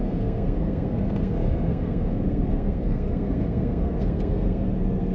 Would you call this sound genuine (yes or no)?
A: no